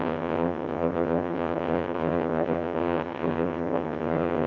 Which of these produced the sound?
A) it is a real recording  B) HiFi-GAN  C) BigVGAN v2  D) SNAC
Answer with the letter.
B